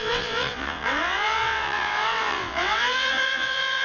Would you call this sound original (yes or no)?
no